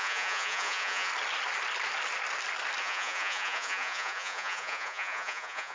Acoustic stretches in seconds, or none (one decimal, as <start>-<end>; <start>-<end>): 1.1-2.8